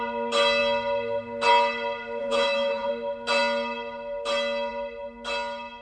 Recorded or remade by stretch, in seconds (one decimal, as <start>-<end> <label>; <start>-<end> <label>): 0.0-2.2 recorded; 2.2-2.9 remade; 2.9-5.8 recorded